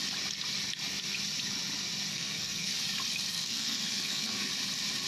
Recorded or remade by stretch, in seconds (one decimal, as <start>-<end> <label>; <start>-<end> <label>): 0.0-2.1 recorded; 2.1-2.7 remade; 2.7-3.3 recorded; 3.3-4.5 remade; 4.5-5.1 recorded